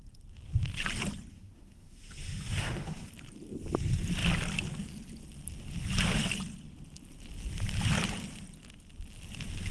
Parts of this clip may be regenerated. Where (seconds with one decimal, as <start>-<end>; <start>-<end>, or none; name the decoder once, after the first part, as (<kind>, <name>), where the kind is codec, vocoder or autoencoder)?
1.3-3.1 (autoencoder, DAC-VAE)